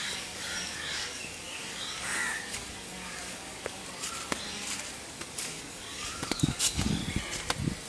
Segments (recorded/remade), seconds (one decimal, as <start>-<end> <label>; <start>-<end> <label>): 0.0-3.8 remade; 3.8-5.2 recorded; 5.2-7.0 remade; 7.0-7.9 recorded